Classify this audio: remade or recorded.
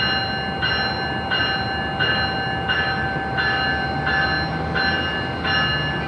recorded